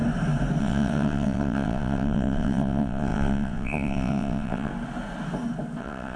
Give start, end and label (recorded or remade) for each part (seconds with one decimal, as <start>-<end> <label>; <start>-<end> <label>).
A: 0.0-0.6 recorded; 0.6-4.7 remade; 4.7-5.8 recorded; 5.8-6.2 remade